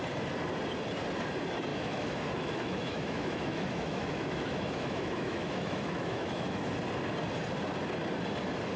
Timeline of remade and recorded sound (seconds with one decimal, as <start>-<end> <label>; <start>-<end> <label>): 0.0-1.7 recorded; 1.7-6.7 remade; 6.7-8.8 recorded